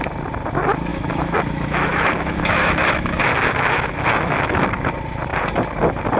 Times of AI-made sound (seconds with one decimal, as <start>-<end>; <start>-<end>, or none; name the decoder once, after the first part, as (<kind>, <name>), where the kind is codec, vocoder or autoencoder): 0.9-4.6 (autoencoder, DAC-VAE)